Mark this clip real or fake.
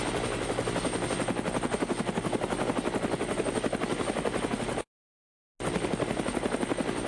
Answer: real